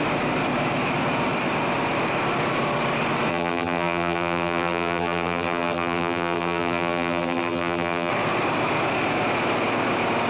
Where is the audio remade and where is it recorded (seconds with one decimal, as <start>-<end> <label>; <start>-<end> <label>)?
0.0-3.3 recorded; 3.3-8.1 remade; 8.1-10.3 recorded

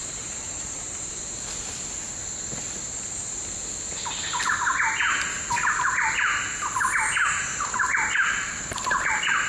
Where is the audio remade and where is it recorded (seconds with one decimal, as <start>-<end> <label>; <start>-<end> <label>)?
0.0-1.1 remade; 1.1-9.5 recorded

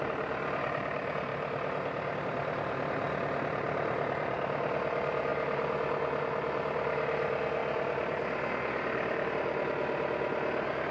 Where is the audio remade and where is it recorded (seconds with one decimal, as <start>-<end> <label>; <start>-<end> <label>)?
0.0-1.3 remade; 1.3-2.2 recorded; 2.2-5.3 remade; 5.3-6.2 recorded; 6.2-10.9 remade

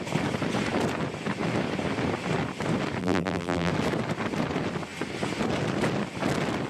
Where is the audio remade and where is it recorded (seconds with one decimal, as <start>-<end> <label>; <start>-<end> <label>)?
0.0-3.0 recorded; 3.0-3.7 remade; 3.7-6.7 recorded

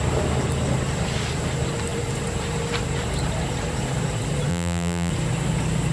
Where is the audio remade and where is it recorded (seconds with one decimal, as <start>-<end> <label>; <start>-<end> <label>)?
0.0-4.5 recorded; 4.5-5.1 remade; 5.1-5.9 recorded

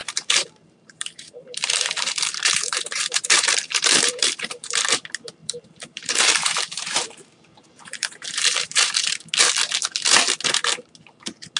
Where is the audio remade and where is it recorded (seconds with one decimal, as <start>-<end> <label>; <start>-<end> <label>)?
0.0-4.8 remade; 4.8-5.4 recorded; 5.4-9.3 remade; 9.3-11.6 recorded